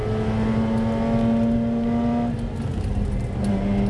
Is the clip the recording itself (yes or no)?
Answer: yes